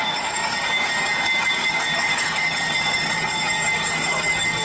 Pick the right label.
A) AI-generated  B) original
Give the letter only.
A